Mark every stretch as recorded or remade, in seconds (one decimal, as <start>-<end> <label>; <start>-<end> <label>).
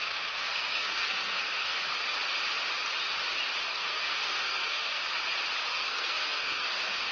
0.0-1.8 remade; 1.8-3.7 recorded; 3.7-5.0 remade; 5.0-5.7 recorded; 5.7-7.1 remade